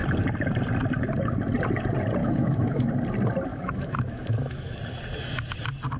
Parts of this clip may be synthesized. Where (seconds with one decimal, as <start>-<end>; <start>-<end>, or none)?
2.2-2.9; 3.5-4.8